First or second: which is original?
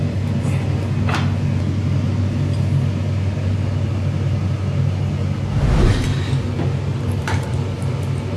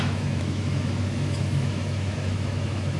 first